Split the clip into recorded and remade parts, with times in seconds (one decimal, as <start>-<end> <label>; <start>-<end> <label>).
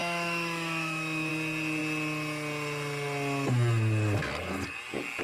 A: 0.0-1.3 remade; 1.3-5.2 recorded